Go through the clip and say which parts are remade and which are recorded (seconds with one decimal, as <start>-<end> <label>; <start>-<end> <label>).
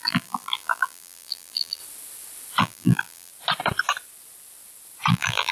0.0-1.8 remade; 1.8-2.6 recorded; 2.6-3.3 remade; 3.3-5.1 recorded; 5.1-5.5 remade